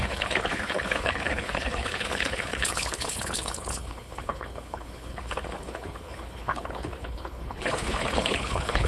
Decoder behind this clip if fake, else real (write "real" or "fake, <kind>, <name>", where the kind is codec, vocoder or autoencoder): fake, codec, HILCodec